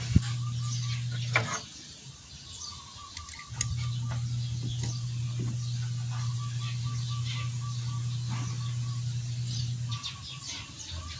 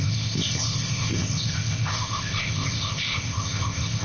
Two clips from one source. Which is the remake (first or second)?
second